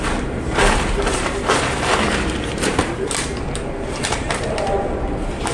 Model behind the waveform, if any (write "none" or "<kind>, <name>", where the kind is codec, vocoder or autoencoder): vocoder, BigVGAN v2